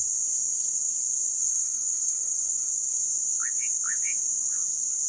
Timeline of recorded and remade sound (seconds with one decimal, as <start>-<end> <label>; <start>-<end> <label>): 0.0-1.4 recorded; 1.4-2.7 remade; 2.7-5.1 recorded